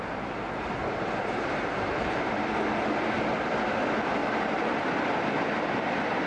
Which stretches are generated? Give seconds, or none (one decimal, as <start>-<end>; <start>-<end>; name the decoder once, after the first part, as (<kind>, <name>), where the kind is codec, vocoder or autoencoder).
0.8-2.3 (vocoder, BigVGAN v2); 4.2-4.8